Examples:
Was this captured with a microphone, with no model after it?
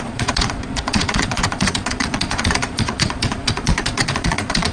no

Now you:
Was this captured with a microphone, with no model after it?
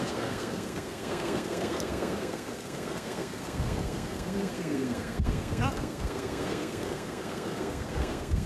no